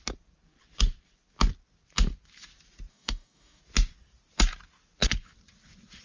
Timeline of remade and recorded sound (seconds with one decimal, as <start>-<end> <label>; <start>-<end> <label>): 0.0-2.9 recorded; 2.9-3.6 remade; 3.6-6.0 recorded